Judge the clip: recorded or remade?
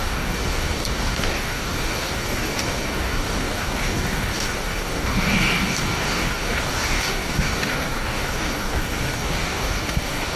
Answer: remade